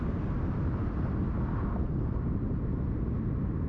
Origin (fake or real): real